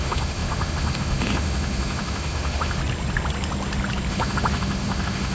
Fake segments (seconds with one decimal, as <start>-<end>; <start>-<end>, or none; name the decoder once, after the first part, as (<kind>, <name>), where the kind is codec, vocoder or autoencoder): 0.0-2.8 (autoencoder, DAC-VAE); 4.1-5.3